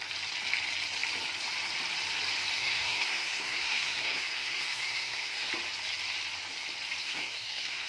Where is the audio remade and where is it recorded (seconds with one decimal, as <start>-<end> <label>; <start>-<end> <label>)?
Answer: 0.0-2.6 recorded; 2.6-5.5 remade; 5.5-7.0 recorded; 7.0-7.9 remade